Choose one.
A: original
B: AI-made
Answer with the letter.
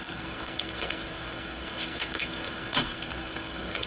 B